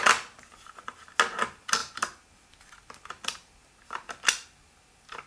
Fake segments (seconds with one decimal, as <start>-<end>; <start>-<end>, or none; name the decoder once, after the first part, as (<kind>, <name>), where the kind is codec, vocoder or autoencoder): none